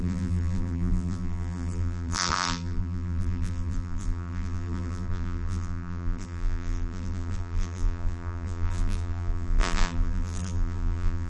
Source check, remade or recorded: remade